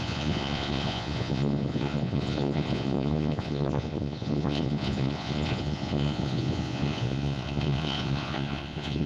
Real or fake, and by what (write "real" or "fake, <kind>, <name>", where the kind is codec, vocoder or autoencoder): fake, vocoder, Vocos